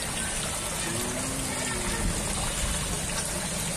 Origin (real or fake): real